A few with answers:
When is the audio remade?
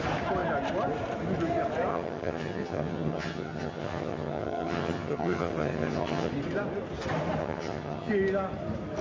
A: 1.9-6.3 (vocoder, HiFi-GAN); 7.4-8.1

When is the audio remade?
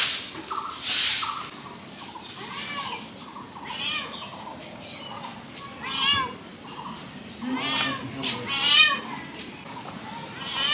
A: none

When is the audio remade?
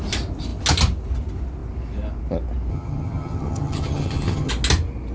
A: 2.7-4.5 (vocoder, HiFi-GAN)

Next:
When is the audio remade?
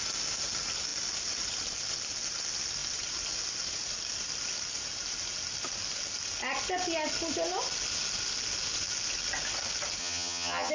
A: 10.0-10.7 (vocoder, HiFi-GAN)